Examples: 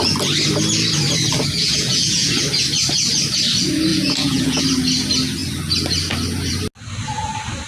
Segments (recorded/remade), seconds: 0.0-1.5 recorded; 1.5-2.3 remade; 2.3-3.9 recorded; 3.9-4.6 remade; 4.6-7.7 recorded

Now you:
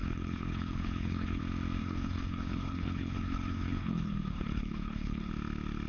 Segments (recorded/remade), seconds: 0.0-1.4 remade; 1.4-1.8 recorded; 1.8-5.3 remade; 5.3-5.9 recorded

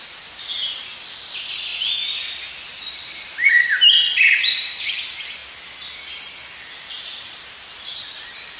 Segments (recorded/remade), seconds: 0.0-8.6 recorded

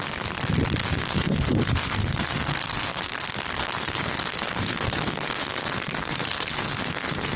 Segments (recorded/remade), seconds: 0.0-0.8 recorded; 0.8-3.1 remade; 3.1-3.6 recorded; 3.6-7.4 remade

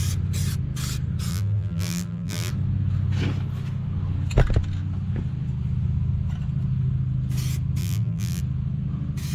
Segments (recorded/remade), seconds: 0.0-1.3 recorded; 1.3-2.5 remade; 2.5-7.8 recorded; 7.8-8.4 remade; 8.4-9.3 recorded

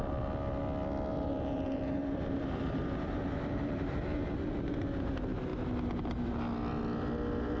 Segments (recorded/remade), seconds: 0.0-1.1 recorded; 1.1-4.6 remade; 4.6-7.6 recorded